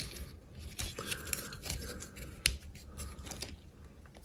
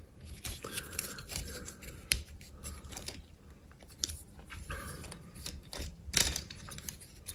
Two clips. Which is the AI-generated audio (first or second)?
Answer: second